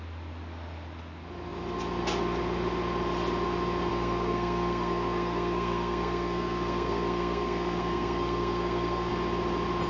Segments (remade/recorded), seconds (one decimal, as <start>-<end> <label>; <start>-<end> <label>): 0.0-3.9 recorded; 3.9-9.1 remade; 9.1-9.9 recorded